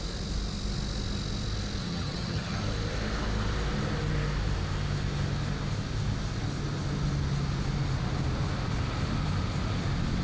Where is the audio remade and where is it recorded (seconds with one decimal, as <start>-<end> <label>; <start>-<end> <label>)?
0.0-1.8 recorded; 1.8-2.6 remade; 2.6-10.2 recorded